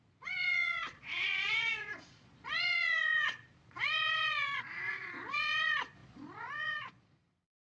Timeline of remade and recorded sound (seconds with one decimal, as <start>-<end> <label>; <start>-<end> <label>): 0.0-7.6 remade